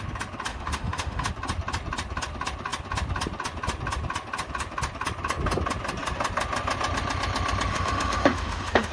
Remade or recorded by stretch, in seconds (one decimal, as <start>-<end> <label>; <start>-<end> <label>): 0.0-0.5 recorded; 0.5-1.3 remade; 1.3-7.7 recorded; 7.7-8.9 remade